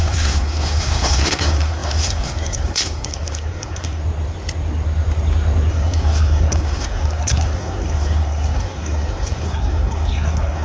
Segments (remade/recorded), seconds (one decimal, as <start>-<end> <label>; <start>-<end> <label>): 0.0-4.0 remade; 4.0-5.7 recorded; 5.7-10.6 remade